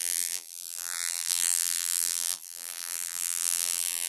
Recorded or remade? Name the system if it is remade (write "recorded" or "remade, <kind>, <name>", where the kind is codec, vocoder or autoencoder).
remade, vocoder, BigVGAN v2